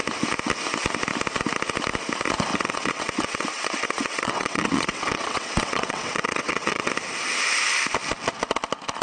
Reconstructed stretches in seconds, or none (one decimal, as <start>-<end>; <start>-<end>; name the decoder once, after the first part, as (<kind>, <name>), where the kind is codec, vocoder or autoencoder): 2.5-6.9 (vocoder, WaveNeXt)